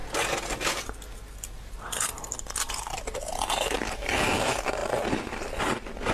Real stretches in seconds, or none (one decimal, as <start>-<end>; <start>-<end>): 0.0-6.1